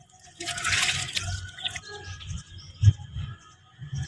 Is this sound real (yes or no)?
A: no